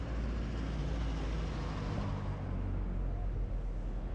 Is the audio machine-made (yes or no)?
no